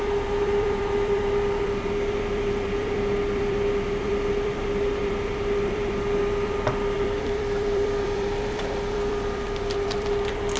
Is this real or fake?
fake